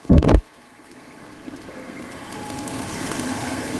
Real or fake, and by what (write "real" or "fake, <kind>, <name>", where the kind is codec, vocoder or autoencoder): fake, codec, SNAC